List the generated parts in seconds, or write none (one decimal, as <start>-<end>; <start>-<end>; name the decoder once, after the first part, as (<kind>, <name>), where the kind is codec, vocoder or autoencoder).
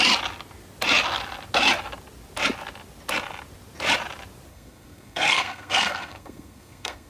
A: 4.5-7.1 (codec, SNAC)